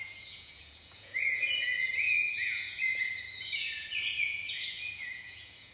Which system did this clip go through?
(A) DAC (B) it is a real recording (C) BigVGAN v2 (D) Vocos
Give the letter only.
D